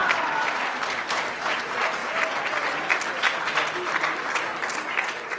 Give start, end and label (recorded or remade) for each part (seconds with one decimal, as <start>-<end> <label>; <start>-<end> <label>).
0.0-5.4 recorded